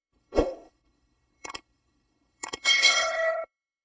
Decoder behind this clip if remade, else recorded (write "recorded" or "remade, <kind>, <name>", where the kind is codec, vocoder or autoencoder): remade, codec, HILCodec